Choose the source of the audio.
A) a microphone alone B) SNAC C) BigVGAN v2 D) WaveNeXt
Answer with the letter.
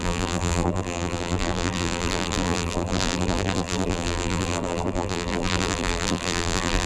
C